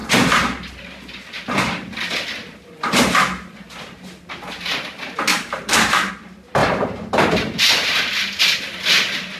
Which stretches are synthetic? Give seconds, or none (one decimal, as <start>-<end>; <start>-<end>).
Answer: 5.3-6.1; 6.6-8.0